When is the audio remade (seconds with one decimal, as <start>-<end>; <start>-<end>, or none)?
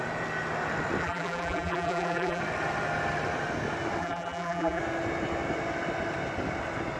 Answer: 1.0-2.4; 4.0-4.8